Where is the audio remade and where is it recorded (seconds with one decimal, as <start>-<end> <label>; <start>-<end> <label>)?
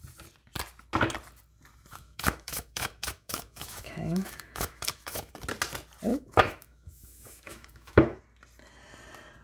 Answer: 0.0-1.9 recorded; 1.9-5.3 remade; 5.3-6.1 recorded; 6.1-8.2 remade; 8.2-9.4 recorded